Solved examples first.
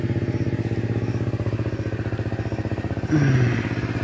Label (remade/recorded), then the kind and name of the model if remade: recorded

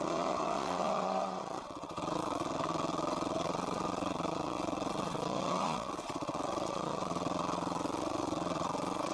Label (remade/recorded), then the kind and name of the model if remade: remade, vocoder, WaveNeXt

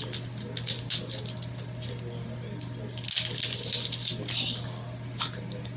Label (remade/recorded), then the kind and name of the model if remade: recorded